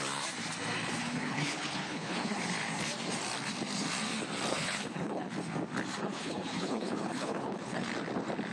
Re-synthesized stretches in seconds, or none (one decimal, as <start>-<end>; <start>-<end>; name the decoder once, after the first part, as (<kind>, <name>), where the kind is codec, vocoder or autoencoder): 1.0-2.4 (codec, HILCodec); 4.5-5.3; 6.0-7.9